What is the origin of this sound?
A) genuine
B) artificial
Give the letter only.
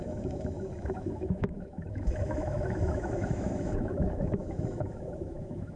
B